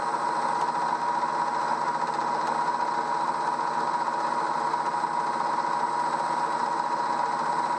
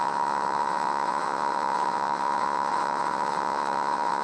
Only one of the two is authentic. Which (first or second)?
first